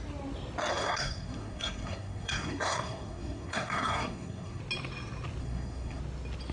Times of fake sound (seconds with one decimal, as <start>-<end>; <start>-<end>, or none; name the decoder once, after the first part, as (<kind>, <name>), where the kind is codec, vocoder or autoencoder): 0.7-4.6 (codec, SNAC); 5.4-6.0